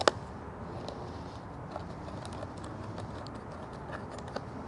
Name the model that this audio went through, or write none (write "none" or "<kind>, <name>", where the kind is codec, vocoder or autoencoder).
none